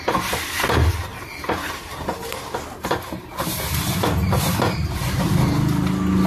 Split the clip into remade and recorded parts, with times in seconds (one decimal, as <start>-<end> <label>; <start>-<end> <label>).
0.0-6.3 recorded